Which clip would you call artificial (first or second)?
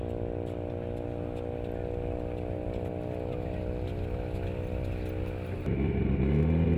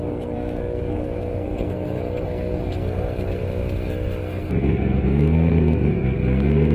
second